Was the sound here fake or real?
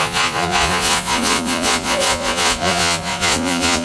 fake